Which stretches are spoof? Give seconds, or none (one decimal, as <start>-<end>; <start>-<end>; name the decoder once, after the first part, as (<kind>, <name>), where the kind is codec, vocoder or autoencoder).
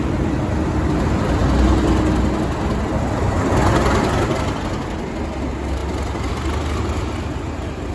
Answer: none